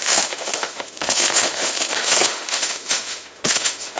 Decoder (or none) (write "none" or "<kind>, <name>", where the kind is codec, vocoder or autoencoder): autoencoder, DAC-VAE